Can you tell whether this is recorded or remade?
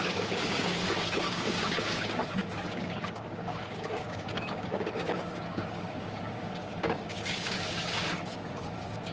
remade